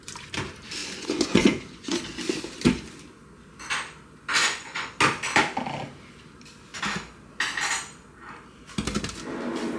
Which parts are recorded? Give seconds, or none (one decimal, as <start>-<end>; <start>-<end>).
0.0-0.8; 2.0-4.4; 4.9-9.8